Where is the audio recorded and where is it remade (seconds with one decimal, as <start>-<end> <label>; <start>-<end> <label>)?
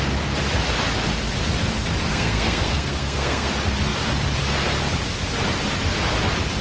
0.0-2.1 recorded; 2.1-3.5 remade; 3.5-6.6 recorded